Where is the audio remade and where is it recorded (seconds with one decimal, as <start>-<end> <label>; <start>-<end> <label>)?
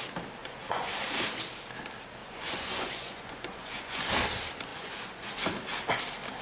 0.0-0.4 recorded; 0.4-0.9 remade; 0.9-2.2 recorded; 2.2-4.1 remade; 4.1-4.7 recorded; 4.7-5.3 remade; 5.3-6.4 recorded